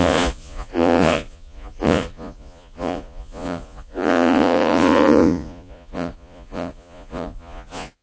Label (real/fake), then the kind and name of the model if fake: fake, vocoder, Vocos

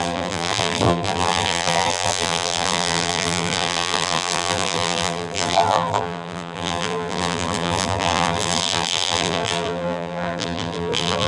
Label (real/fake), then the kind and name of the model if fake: fake, vocoder, BigVGAN v2